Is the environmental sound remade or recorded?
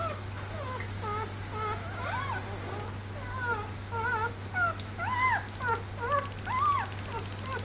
recorded